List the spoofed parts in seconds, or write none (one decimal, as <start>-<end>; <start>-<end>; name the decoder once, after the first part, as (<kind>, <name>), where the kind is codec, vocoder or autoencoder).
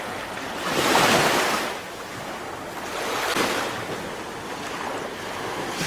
none